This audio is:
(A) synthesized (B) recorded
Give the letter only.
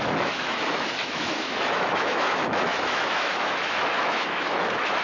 A